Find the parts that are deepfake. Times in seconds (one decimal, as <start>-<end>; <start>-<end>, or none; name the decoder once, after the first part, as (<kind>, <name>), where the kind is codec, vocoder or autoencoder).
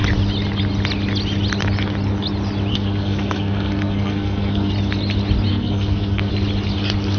2.7-4.7 (codec, SNAC); 5.5-6.3